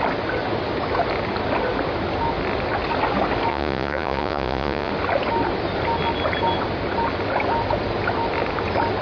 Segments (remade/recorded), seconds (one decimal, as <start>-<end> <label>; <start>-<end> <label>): 0.0-3.5 recorded; 3.5-4.9 remade; 4.9-9.0 recorded